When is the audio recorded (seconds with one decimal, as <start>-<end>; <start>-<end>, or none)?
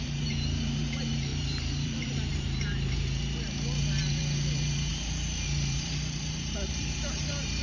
none